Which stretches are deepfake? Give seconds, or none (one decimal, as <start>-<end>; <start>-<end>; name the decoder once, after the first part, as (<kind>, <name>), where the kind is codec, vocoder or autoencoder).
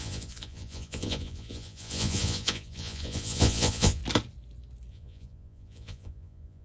0.0-4.0 (vocoder, Vocos); 4.9-6.6